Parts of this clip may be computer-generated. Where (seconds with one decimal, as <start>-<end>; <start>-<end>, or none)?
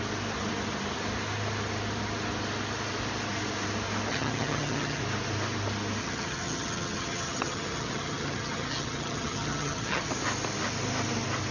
4.1-5.0; 6.0-10.1